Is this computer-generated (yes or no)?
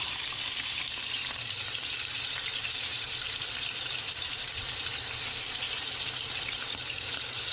yes